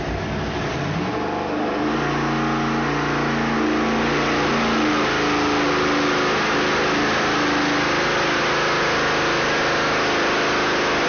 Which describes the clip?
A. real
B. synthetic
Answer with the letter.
A